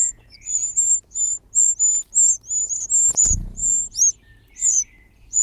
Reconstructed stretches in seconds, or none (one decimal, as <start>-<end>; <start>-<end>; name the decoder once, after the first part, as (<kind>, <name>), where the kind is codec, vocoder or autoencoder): 0.0-0.6 (vocoder, Vocos); 3.2-3.6; 4.7-5.4